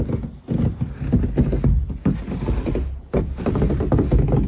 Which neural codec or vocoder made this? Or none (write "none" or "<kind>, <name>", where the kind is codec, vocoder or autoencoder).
none